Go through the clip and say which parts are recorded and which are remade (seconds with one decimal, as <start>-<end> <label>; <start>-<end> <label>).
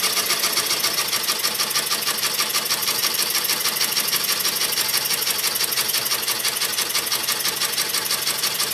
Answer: 0.0-2.8 recorded; 2.8-3.4 remade; 3.4-8.7 recorded